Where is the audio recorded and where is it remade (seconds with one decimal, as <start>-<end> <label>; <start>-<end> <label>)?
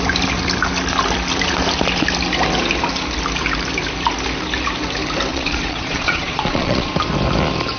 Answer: 0.0-5.3 recorded; 5.3-6.9 remade; 6.9-7.8 recorded